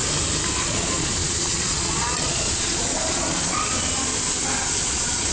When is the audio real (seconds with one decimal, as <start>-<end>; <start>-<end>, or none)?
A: 0.0-0.6; 4.1-4.8

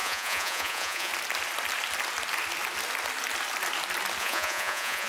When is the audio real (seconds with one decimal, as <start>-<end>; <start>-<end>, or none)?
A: 1.1-4.2

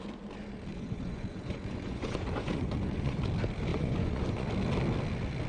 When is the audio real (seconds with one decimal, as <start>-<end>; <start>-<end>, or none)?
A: 0.0-0.7; 3.2-3.7; 4.5-5.5

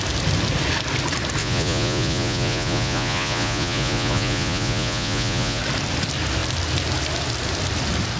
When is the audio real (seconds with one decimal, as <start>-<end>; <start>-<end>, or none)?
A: 0.0-1.4; 5.6-8.2